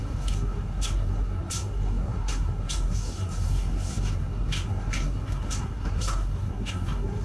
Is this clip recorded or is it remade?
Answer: remade